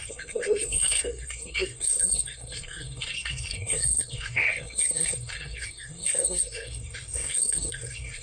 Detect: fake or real fake